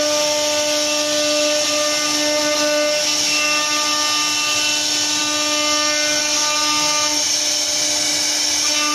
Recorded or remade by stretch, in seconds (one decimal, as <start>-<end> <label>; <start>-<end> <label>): 0.0-8.9 recorded

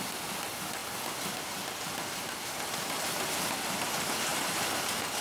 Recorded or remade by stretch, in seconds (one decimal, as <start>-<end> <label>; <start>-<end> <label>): 0.0-0.8 remade; 0.8-3.9 recorded; 3.9-4.3 remade; 4.3-5.2 recorded

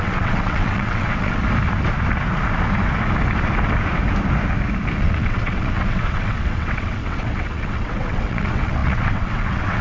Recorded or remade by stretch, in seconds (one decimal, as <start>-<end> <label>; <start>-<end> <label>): 0.0-1.4 remade; 1.4-5.0 recorded; 5.0-9.8 remade